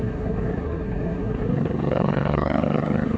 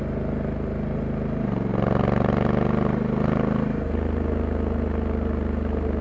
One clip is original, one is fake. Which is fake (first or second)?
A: first